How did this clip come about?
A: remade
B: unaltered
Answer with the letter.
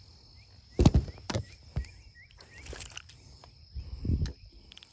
B